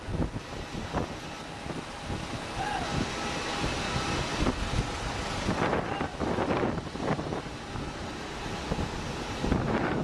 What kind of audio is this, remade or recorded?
recorded